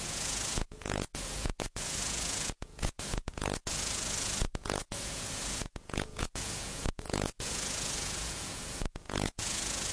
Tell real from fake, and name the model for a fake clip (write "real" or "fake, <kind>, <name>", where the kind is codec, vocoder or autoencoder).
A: fake, vocoder, Vocos